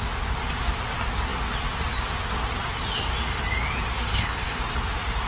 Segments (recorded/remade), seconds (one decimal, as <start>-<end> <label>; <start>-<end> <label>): 0.0-4.1 recorded; 4.1-4.6 remade; 4.6-5.3 recorded